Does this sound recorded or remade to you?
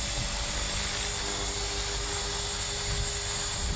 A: recorded